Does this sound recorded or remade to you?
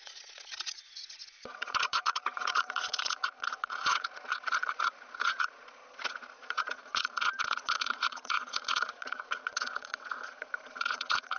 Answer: remade